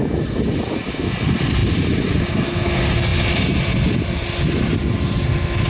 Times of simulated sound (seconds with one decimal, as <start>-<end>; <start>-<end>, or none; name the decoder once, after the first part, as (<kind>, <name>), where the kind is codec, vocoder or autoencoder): 1.6-2.4 (vocoder, BigVGAN v2)